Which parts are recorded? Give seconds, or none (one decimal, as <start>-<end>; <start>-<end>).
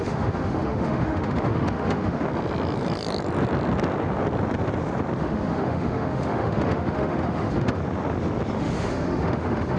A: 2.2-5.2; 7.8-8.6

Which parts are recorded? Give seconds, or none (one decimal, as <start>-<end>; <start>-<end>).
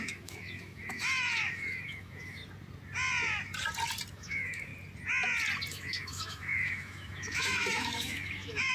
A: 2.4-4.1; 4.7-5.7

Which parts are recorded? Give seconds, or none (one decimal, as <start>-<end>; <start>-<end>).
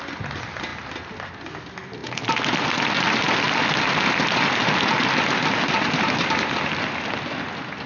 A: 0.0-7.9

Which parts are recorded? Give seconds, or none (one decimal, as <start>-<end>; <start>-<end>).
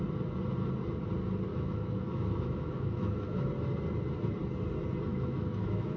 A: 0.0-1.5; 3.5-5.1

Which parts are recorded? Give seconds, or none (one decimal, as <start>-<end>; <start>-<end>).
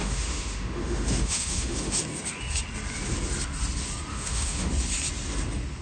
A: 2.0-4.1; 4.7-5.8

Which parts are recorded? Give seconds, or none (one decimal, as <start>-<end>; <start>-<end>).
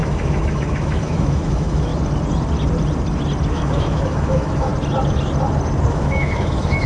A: 1.9-3.5; 4.7-5.9